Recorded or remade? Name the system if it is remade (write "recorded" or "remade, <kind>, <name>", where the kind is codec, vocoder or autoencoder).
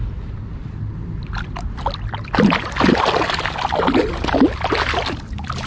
recorded